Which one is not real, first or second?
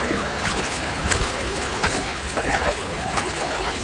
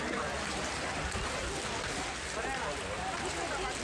first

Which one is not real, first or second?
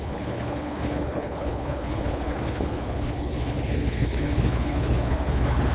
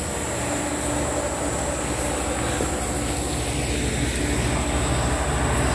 first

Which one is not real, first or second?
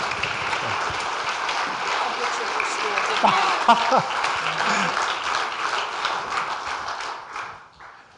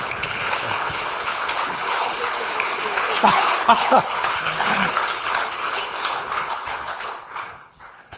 second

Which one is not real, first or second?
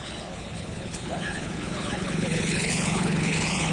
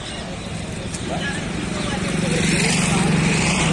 first